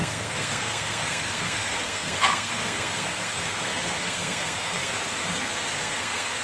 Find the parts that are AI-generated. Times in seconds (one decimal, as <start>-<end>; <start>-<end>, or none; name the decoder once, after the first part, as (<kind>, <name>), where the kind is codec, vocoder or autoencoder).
0.0-6.4 (codec, SNAC)